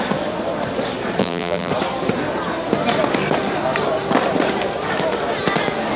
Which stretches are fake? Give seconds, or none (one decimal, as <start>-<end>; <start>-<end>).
1.2-1.7